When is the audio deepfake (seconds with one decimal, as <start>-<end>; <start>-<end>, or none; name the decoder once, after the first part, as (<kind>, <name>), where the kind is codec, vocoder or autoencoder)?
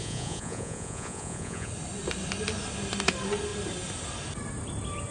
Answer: 0.0-1.7 (vocoder, Vocos)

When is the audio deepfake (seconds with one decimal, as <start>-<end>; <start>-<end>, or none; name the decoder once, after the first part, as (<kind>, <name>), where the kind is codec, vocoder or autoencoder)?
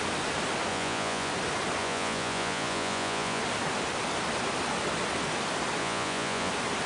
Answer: 0.7-1.3 (vocoder, Vocos); 1.8-3.4; 5.8-6.5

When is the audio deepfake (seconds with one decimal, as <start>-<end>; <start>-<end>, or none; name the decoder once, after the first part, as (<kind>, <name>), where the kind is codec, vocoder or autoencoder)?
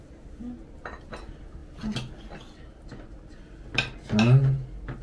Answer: none